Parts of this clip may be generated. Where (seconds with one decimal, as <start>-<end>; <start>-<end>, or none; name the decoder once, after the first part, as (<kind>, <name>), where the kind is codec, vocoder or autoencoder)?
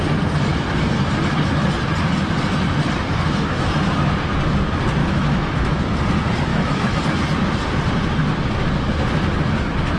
5.0-5.8 (autoencoder, DAC-VAE); 6.5-7.0